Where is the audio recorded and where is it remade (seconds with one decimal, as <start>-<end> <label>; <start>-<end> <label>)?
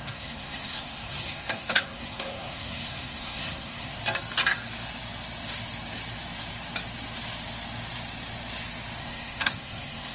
0.0-4.0 remade; 4.0-9.0 recorded; 9.0-10.1 remade